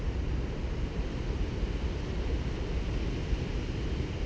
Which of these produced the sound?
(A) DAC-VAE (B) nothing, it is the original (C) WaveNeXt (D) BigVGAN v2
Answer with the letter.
B